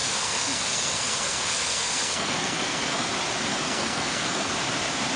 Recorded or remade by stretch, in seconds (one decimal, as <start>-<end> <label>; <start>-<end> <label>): 0.0-3.1 remade; 3.1-3.5 recorded; 3.5-4.5 remade; 4.5-5.2 recorded